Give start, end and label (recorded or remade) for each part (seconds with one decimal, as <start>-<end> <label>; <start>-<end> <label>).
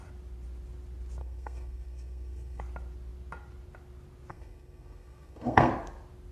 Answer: 0.0-1.2 recorded; 1.2-2.6 remade; 2.6-4.3 recorded; 4.3-5.7 remade; 5.7-6.3 recorded